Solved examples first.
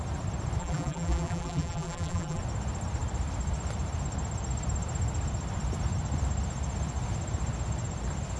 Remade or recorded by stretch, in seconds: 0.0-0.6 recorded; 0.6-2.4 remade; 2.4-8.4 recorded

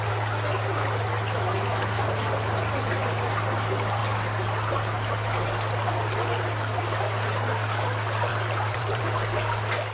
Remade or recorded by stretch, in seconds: 0.0-8.3 recorded; 8.3-9.0 remade; 9.0-9.9 recorded

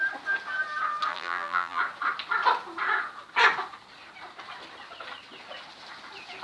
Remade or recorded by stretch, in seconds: 0.0-1.1 recorded; 1.1-1.8 remade; 1.8-6.4 recorded

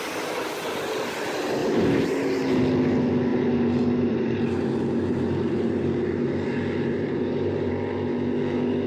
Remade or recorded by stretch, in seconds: 0.0-1.6 recorded; 1.6-2.6 remade; 2.6-3.3 recorded; 3.3-7.7 remade; 7.7-8.9 recorded

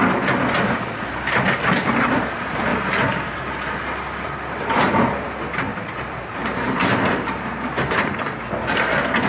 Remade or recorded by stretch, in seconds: 0.0-2.7 recorded; 2.7-3.5 remade; 3.5-5.7 recorded; 5.7-7.5 remade; 7.5-9.3 recorded